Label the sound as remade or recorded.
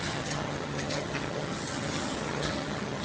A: remade